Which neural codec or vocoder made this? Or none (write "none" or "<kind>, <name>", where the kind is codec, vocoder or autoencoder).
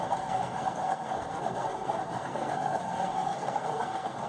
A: codec, SNAC